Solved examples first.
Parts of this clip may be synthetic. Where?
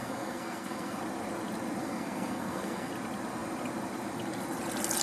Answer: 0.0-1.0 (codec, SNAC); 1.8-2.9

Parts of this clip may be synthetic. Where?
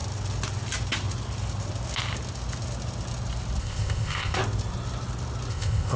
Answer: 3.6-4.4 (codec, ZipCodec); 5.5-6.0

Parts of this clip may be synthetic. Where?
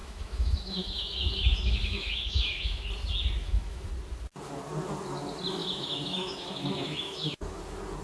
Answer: 0.0-2.9 (autoencoder, DAC-VAE); 3.4-3.9; 5.6-7.6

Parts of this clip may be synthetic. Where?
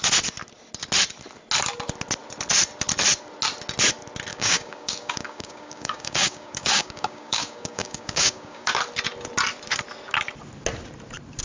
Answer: 4.3-8.7 (codec, DAC)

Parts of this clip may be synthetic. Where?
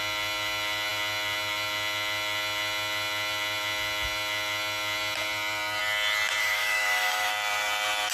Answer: 6.4-7.3 (autoencoder, DAC-VAE)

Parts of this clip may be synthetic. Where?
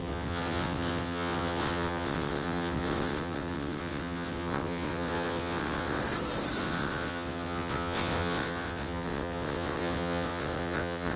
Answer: 0.0-6.0 (vocoder, WaveNeXt); 6.6-11.2